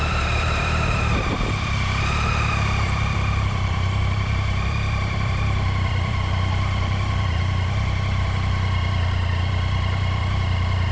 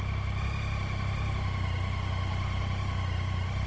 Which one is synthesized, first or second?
first